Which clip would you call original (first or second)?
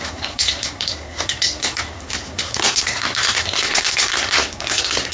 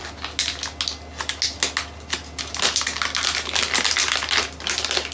second